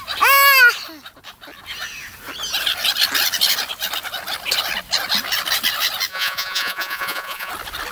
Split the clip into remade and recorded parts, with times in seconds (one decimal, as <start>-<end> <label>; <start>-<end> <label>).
0.0-6.1 recorded; 6.1-7.5 remade; 7.5-7.9 recorded